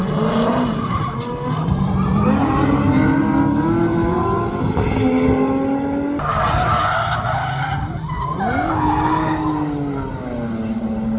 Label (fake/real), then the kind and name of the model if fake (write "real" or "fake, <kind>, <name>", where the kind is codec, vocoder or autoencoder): real